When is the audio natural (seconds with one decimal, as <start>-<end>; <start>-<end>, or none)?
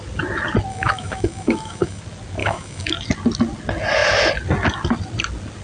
0.0-0.7; 2.0-2.4; 2.9-5.6